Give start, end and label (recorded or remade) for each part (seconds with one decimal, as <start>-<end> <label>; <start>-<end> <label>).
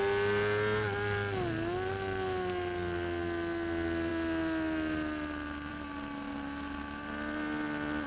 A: 0.0-8.1 recorded